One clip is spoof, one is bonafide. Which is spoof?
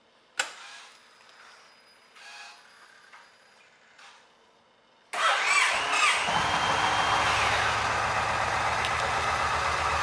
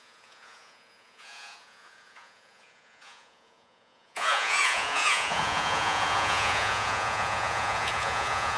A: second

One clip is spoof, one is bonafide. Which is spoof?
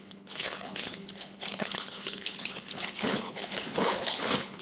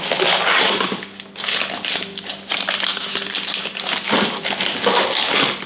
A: first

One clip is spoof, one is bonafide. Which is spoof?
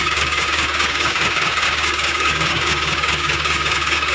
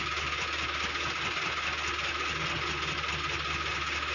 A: first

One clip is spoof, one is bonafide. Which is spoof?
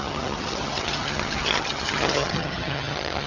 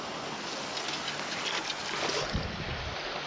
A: first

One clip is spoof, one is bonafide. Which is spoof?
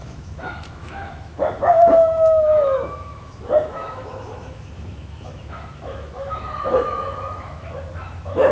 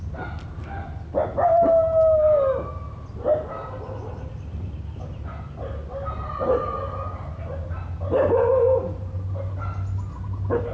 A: first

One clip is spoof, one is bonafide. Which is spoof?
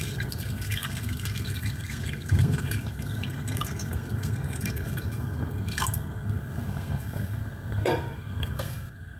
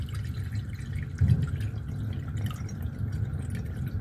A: first